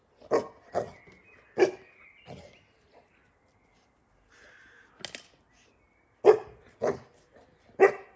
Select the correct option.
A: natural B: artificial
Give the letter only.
A